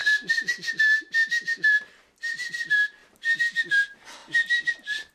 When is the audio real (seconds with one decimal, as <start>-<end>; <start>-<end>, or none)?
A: 0.0-3.0; 3.6-4.2